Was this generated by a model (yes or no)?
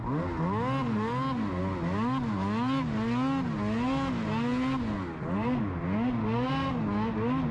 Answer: no